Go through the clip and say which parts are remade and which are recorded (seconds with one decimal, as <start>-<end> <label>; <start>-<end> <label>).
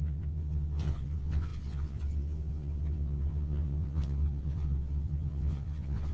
0.0-6.1 remade